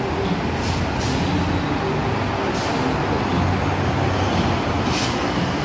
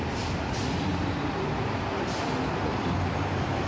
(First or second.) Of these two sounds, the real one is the first